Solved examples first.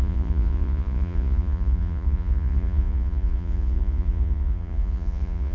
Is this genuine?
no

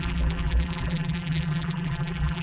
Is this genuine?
no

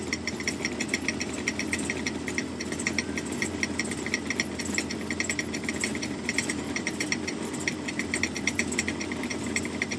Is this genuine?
yes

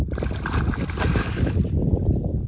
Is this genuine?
yes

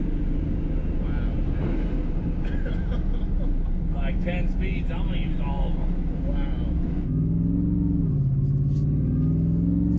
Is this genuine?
yes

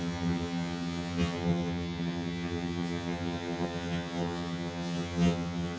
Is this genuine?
no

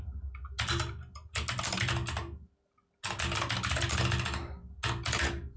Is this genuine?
yes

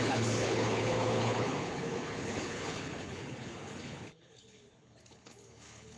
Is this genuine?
no